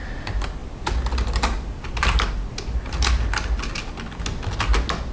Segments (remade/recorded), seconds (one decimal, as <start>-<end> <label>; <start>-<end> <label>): 0.0-5.1 recorded